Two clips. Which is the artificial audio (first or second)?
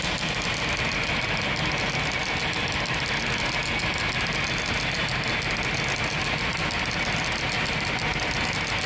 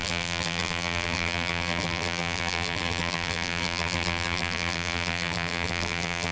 second